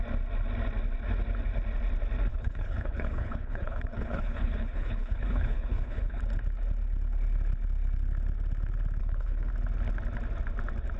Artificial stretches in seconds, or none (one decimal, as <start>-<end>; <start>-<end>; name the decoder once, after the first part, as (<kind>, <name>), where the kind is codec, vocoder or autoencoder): 2.3-6.2 (codec, HILCodec); 9.0-9.5